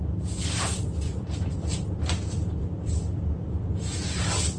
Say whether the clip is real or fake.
fake